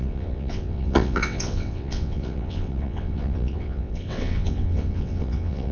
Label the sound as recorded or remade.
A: remade